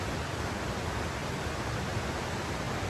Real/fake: real